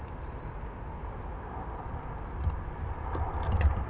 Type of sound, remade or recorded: recorded